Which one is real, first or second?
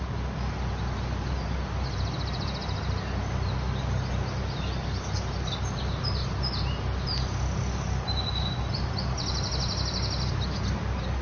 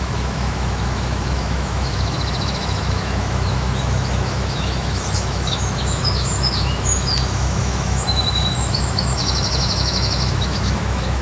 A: first